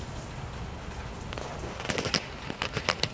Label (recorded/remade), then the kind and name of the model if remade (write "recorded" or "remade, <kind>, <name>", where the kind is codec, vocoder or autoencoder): recorded